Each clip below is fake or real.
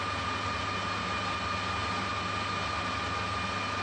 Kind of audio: real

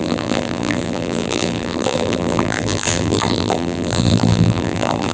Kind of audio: fake